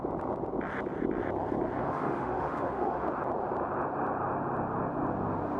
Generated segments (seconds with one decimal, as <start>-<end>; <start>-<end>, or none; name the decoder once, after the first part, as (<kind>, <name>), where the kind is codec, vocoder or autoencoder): 1.8-3.1 (autoencoder, DAC-VAE)